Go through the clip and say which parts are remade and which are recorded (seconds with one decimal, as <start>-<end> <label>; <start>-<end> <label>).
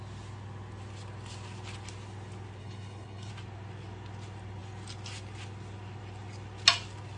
0.0-2.6 recorded; 2.6-3.3 remade; 3.3-7.2 recorded